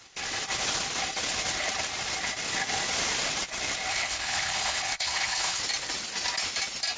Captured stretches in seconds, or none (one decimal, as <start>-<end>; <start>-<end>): 0.0-3.9; 5.6-7.0